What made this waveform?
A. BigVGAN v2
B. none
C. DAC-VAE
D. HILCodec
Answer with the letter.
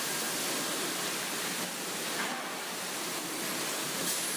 B